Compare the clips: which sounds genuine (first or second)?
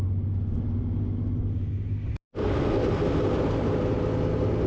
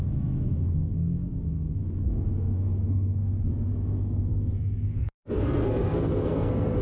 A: first